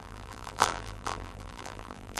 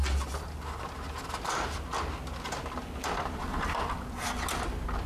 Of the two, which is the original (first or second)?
second